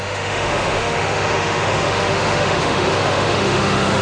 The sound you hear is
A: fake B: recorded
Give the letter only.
A